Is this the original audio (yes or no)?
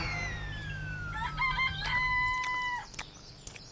yes